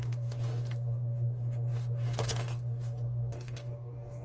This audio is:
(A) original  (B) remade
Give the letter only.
B